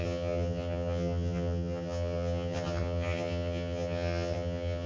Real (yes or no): no